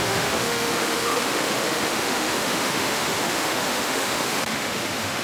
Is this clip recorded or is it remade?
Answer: remade